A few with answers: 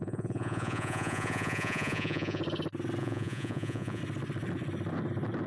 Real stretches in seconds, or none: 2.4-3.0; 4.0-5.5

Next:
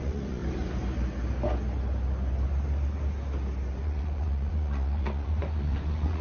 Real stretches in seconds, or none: 0.4-3.8

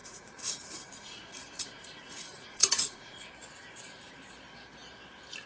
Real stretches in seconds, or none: 3.3-5.5

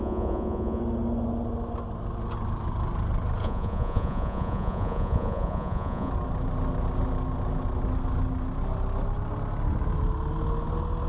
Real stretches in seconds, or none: 0.8-3.4; 6.1-11.1

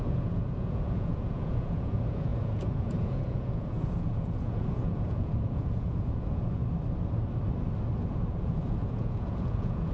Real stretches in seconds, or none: 6.6-8.0